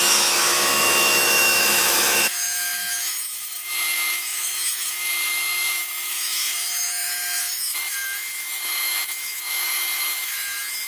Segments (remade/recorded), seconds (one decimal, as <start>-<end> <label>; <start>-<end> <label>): 0.0-10.9 remade